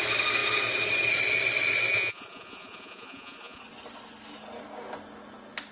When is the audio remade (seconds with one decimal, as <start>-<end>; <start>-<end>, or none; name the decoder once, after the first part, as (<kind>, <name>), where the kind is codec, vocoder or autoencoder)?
1.9-3.6 (vocoder, Vocos)